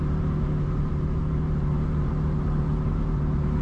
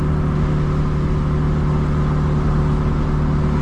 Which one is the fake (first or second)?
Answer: first